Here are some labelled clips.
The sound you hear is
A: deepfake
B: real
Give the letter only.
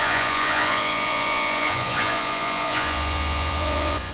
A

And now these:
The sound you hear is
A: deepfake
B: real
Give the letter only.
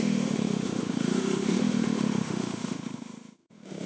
A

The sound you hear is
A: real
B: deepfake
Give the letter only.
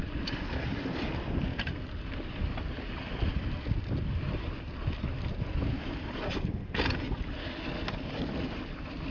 A